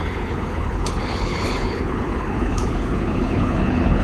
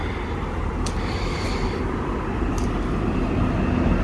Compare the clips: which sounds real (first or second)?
second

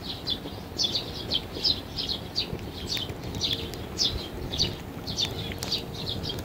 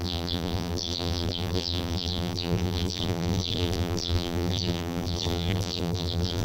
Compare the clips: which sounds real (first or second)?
first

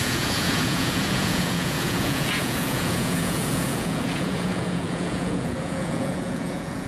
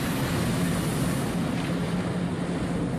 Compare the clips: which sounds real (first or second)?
second